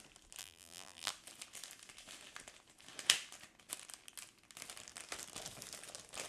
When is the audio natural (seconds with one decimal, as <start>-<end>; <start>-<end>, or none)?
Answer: 0.0-0.4; 1.1-6.3